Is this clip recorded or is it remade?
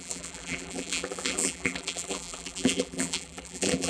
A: remade